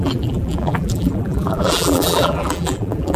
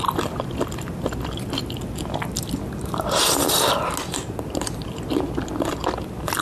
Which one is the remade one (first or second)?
first